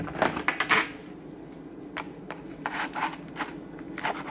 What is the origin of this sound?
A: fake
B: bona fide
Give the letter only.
B